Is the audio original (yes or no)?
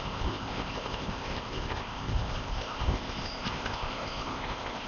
no